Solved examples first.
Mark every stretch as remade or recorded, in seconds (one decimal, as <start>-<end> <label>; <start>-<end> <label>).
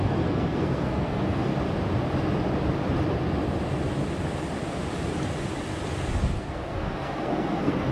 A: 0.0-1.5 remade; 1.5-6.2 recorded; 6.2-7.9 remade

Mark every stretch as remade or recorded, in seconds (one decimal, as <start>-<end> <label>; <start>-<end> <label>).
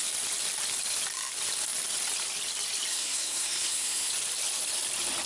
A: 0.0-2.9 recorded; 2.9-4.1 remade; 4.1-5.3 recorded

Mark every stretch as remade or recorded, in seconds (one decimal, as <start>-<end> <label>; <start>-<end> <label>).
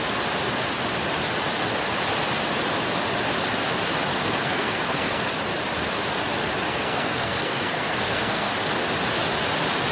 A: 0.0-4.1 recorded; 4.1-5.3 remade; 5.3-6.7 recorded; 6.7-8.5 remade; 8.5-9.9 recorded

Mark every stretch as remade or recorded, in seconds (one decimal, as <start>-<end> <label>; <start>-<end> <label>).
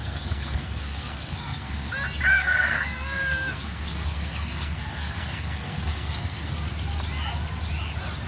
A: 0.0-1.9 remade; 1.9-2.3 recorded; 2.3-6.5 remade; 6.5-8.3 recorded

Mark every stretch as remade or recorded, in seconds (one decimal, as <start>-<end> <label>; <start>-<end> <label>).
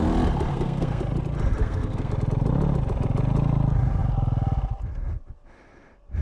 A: 0.0-0.5 recorded; 0.5-1.0 remade; 1.0-1.6 recorded; 1.6-2.1 remade; 2.1-6.2 recorded